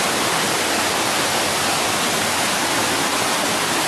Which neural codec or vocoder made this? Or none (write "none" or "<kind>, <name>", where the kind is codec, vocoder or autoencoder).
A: none